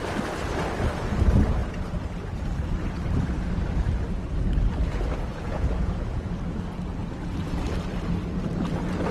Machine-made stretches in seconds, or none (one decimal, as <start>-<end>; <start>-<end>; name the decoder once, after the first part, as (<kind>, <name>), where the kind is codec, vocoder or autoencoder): 5.3-6.3 (vocoder, Vocos)